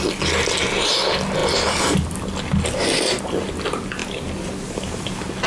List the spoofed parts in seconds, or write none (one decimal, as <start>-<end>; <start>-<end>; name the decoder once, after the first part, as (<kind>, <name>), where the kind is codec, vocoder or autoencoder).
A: none